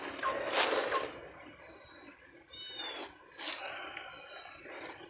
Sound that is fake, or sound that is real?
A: real